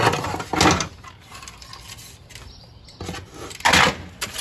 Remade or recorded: recorded